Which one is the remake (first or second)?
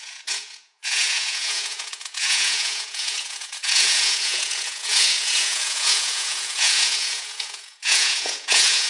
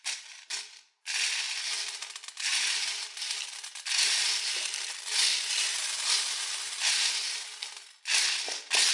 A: first